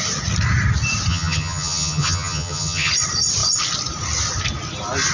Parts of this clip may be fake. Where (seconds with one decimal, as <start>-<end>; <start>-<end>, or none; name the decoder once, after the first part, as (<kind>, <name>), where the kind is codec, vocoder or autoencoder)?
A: 1.1-2.9 (vocoder, HiFi-GAN)